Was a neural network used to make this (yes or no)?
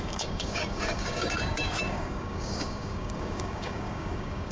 yes